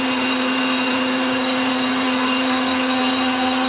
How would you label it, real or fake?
fake